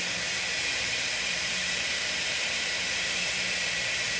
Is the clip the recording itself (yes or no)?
no